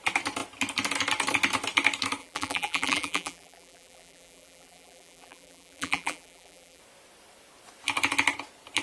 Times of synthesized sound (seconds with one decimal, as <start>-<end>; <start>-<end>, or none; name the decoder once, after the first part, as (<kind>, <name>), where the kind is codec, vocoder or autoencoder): 2.2-6.8 (vocoder, BigVGAN v2)